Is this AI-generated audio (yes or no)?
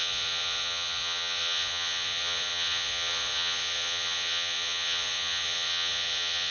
yes